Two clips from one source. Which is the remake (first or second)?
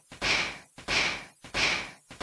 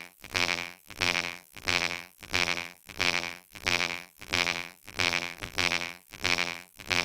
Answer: second